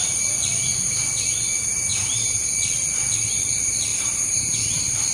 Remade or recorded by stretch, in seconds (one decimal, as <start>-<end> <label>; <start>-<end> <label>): 0.0-1.9 recorded; 1.9-2.5 remade; 2.5-3.9 recorded; 3.9-4.6 remade; 4.6-5.1 recorded